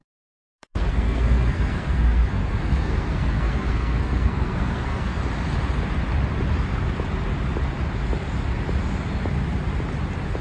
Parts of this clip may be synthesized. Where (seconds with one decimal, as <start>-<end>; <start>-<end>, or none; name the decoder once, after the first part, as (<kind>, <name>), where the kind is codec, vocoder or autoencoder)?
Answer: 0.0-5.2 (codec, SNAC)